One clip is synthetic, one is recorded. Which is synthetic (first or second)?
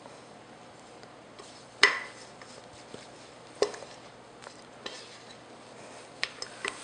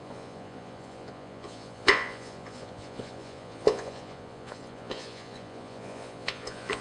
second